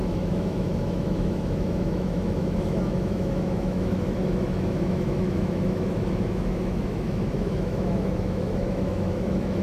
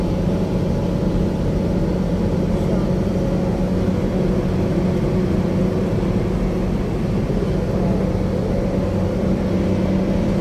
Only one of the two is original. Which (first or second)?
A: second